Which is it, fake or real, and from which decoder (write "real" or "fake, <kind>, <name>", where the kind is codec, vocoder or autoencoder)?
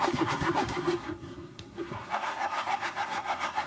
fake, codec, SNAC